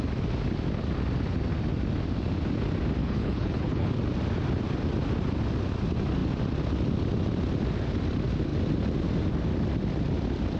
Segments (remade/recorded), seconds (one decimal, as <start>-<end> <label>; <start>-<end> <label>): 0.0-3.0 recorded; 3.0-3.9 remade; 3.9-10.6 recorded